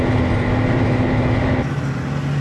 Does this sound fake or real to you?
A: real